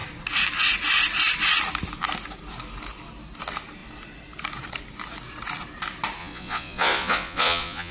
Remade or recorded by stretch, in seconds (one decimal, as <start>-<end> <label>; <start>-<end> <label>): 0.0-6.2 recorded; 6.2-7.9 remade